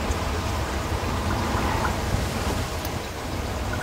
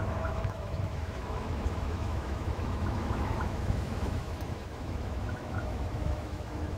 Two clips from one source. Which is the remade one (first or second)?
second